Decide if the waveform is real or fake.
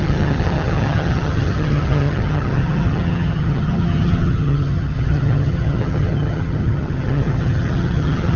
fake